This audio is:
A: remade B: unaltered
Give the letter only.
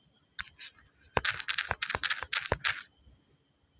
B